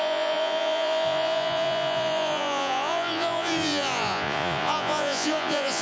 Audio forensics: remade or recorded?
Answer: remade